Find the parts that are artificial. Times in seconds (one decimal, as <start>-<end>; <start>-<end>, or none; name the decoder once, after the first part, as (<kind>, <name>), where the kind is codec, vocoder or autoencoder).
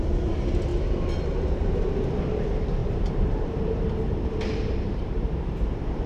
2.8-5.6 (vocoder, BigVGAN v2)